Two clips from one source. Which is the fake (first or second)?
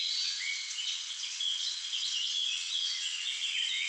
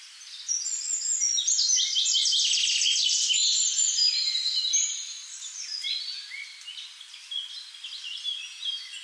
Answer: first